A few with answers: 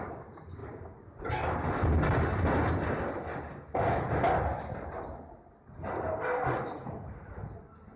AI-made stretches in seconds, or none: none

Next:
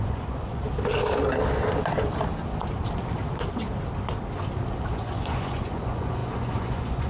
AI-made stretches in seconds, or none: 0.0-0.6 (vocoder, Vocos); 4.9-7.1

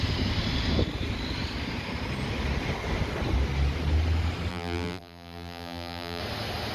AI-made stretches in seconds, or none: 4.5-6.2 (vocoder, BigVGAN v2)

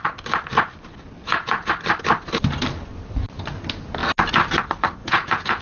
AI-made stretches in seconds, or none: 1.2-1.7 (vocoder, Vocos); 5.0-5.6

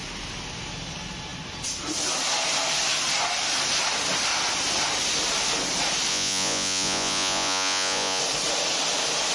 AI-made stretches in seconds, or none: 6.1-8.2 (vocoder, Vocos)

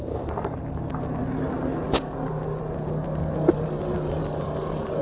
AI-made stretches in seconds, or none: none

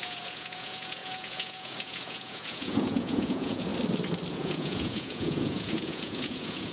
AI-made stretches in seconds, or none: 0.0-3.7 (vocoder, Vocos); 4.3-6.7

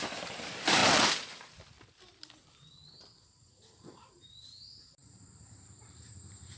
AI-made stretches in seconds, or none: 0.0-0.8 (vocoder, BigVGAN v2); 3.8-6.6